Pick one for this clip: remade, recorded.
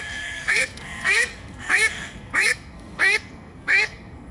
remade